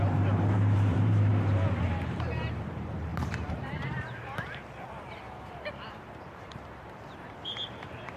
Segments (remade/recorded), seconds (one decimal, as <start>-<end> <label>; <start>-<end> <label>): 0.0-1.3 remade; 1.3-1.8 recorded; 1.8-8.2 remade